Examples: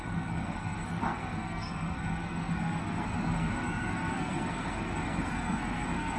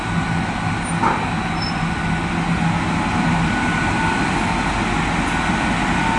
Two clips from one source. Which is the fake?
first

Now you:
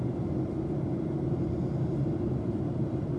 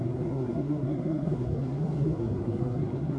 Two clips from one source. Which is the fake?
second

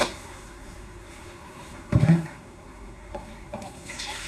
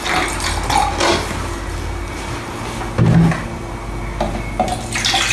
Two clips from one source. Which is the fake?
first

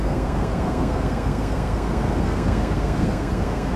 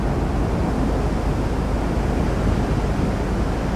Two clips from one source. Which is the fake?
first